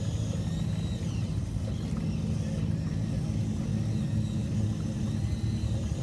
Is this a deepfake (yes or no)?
no